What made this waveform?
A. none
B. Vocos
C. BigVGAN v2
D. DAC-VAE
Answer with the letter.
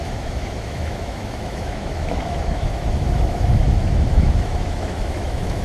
D